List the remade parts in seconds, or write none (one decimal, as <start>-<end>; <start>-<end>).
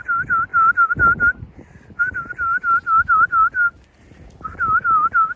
none